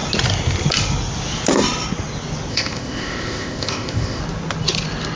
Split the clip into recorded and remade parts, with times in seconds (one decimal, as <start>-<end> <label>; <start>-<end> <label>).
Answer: 0.0-2.5 recorded; 2.5-4.2 remade; 4.2-5.2 recorded